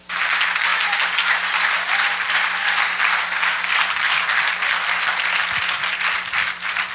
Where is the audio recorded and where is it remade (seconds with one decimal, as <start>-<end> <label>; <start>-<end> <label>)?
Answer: 0.0-6.9 recorded